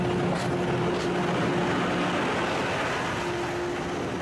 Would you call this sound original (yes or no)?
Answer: yes